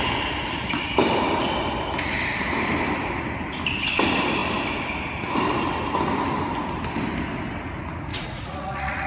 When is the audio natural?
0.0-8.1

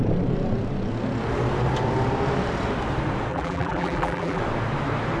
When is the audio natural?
0.0-3.3; 4.4-5.2

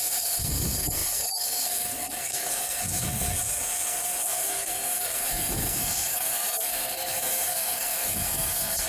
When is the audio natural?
none

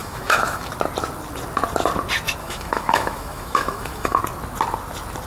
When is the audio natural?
0.7-2.4; 4.2-5.3